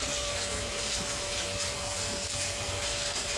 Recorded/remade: remade